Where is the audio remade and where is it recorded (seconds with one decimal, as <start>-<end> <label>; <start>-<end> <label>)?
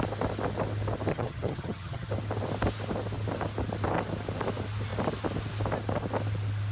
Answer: 0.0-1.1 recorded; 1.1-2.1 remade; 2.1-6.7 recorded